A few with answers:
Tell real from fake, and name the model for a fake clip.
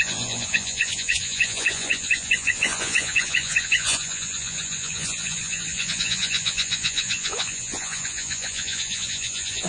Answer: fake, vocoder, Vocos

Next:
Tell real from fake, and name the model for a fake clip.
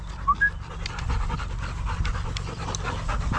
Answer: real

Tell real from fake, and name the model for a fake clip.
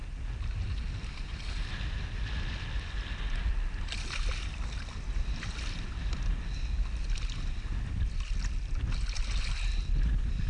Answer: real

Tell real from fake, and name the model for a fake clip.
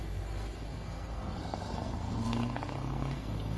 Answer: fake, codec, SNAC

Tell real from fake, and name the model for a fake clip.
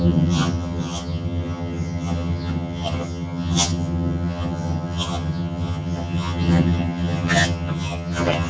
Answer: fake, vocoder, HiFi-GAN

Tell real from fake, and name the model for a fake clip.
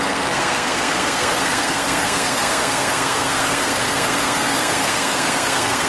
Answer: fake, codec, SNAC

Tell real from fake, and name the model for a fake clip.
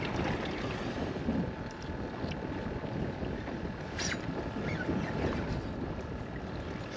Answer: real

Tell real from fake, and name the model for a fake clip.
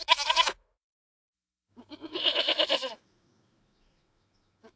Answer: fake, autoencoder, DAC-VAE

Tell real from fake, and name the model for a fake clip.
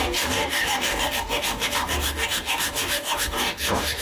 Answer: fake, codec, DAC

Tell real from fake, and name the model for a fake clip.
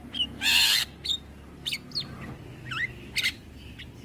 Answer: real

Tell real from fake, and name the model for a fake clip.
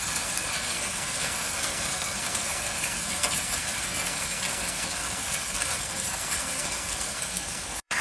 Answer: fake, codec, SNAC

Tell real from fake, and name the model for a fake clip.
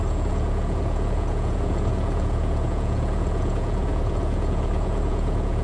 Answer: fake, vocoder, Vocos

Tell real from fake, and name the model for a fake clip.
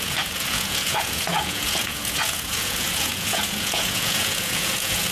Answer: fake, vocoder, Vocos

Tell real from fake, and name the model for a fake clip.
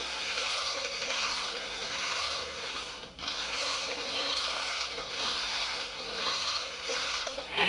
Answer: fake, codec, SNAC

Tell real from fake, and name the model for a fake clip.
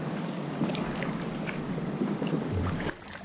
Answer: fake, codec, DAC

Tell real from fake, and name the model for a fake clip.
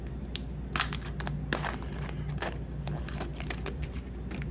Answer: real